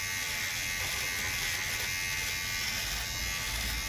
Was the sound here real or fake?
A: real